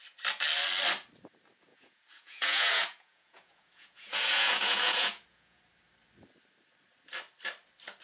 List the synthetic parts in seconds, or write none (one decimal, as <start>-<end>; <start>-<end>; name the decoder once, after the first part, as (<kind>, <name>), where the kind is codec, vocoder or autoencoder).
1.7-5.6 (vocoder, Vocos)